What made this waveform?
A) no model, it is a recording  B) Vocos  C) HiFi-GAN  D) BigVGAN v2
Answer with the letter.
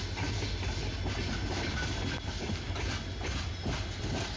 A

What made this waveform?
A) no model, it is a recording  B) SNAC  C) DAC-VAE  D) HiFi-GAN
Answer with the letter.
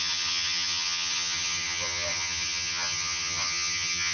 D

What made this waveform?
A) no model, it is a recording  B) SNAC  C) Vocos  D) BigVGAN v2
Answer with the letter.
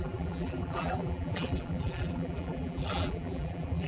D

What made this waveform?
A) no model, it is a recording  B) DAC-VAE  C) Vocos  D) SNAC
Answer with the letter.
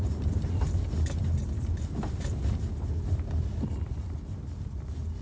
A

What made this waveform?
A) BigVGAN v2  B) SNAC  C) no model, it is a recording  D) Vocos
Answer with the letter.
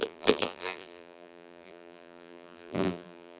A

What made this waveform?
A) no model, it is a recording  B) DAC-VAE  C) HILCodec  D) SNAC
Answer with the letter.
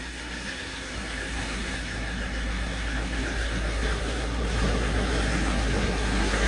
D